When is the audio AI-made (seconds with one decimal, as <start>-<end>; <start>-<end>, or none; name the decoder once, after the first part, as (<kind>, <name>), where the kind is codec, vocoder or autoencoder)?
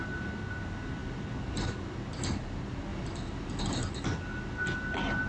none